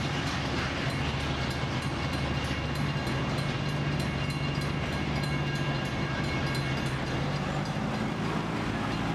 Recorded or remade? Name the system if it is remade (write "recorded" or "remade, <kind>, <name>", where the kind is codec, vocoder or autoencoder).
recorded